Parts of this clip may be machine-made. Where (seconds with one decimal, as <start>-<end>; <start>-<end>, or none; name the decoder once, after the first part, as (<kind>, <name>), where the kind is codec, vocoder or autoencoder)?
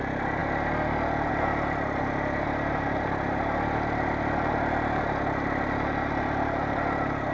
none